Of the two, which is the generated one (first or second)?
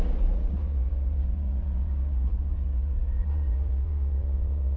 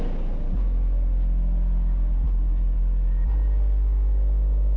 first